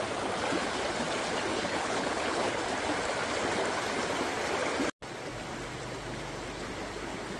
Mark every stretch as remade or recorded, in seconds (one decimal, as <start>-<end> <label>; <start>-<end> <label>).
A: 0.0-1.5 recorded; 1.5-2.6 remade; 2.6-7.4 recorded